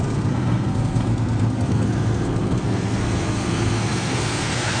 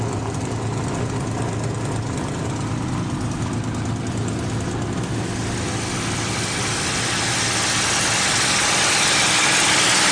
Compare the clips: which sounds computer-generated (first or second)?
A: first